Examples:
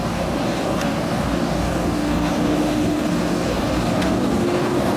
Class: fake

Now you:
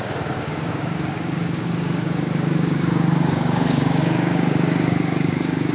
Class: fake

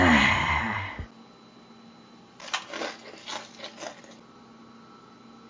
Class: real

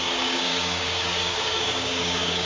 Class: fake